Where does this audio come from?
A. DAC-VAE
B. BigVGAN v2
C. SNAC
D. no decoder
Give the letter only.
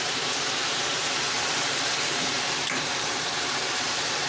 B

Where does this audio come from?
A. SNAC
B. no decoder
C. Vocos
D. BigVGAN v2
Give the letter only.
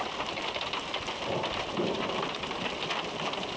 D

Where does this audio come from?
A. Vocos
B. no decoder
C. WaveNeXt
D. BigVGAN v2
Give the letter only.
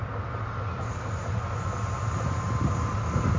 D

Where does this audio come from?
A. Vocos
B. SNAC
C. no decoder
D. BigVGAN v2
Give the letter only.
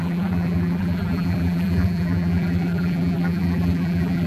D